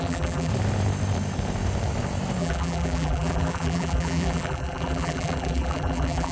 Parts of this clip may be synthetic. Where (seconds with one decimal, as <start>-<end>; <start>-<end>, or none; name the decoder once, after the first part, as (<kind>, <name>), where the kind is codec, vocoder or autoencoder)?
0.0-0.5 (vocoder, BigVGAN v2); 2.4-6.3